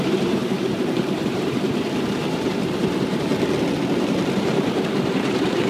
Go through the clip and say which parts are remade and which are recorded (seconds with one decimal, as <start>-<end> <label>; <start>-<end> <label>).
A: 0.0-3.3 remade; 3.3-4.3 recorded; 4.3-5.7 remade